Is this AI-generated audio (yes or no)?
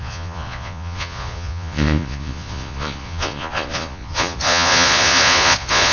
yes